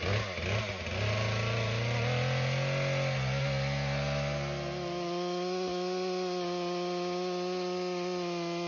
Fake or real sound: real